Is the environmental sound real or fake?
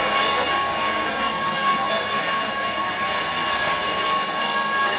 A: fake